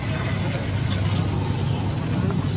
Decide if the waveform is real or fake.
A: real